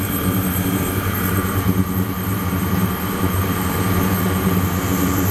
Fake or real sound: fake